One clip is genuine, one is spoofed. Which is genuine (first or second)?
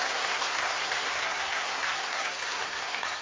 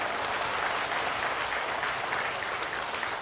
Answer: second